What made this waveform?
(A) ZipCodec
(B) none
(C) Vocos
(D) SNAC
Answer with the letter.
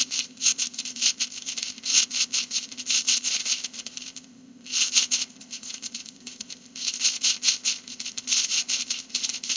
A